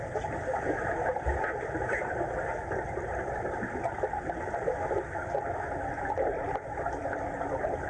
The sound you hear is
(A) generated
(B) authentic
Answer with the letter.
B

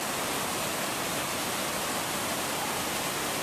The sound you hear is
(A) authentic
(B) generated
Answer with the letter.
A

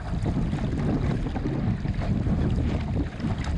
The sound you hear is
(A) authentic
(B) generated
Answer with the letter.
A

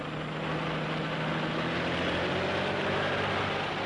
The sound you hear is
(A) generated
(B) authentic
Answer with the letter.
B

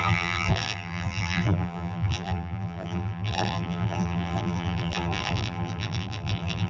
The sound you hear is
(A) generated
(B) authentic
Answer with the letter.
A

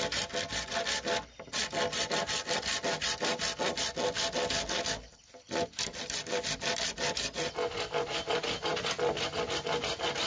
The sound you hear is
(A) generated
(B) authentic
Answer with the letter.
B